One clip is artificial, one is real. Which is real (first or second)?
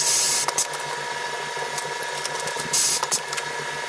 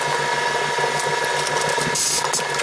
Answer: second